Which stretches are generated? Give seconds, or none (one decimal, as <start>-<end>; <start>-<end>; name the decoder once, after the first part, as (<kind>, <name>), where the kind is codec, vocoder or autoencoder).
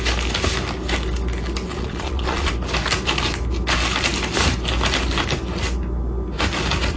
1.7-2.5 (vocoder, Vocos)